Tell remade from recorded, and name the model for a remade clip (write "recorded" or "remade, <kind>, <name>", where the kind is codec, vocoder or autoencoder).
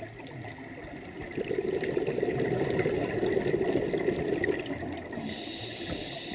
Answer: recorded